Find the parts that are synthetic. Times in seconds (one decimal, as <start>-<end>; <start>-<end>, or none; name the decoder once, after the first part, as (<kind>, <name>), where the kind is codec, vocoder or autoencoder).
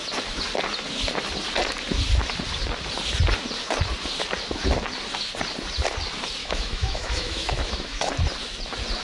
6.4-8.1 (autoencoder, DAC-VAE)